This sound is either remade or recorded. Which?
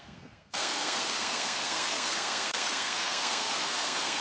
remade